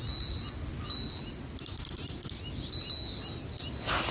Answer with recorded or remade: recorded